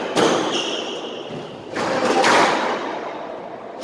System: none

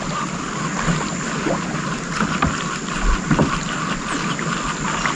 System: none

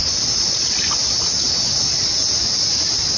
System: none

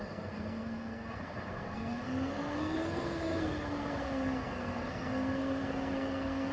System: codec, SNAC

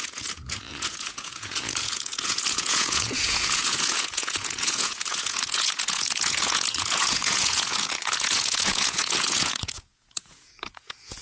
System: vocoder, Vocos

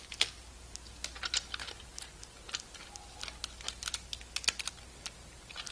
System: none